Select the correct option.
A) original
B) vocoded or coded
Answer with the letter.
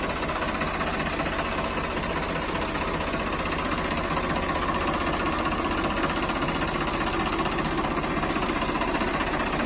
A